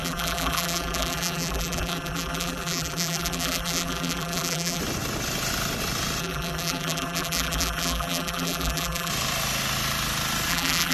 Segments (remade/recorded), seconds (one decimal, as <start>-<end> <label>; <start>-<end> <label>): 0.0-4.8 remade; 4.8-6.2 recorded; 6.2-9.1 remade; 9.1-10.5 recorded; 10.5-10.9 remade